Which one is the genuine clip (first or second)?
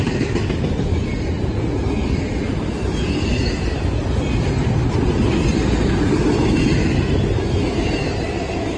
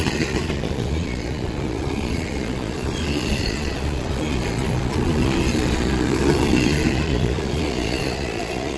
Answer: first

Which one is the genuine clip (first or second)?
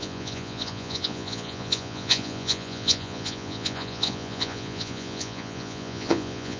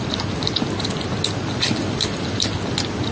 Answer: second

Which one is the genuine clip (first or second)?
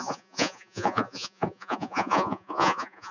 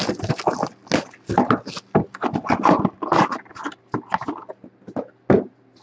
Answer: second